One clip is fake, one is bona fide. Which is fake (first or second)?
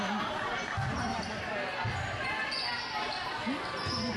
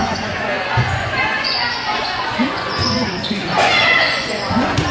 second